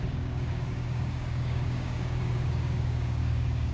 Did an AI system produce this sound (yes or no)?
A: yes